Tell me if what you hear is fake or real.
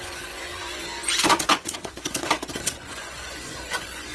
fake